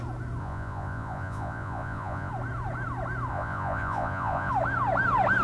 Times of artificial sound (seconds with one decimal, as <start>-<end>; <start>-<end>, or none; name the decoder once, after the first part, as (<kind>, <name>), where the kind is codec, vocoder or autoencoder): 0.4-2.3 (vocoder, Vocos); 3.3-4.5